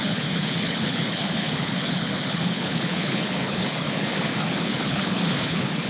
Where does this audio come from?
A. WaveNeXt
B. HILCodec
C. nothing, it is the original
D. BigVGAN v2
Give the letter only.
B